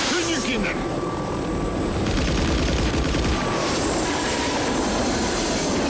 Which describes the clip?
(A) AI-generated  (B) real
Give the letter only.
A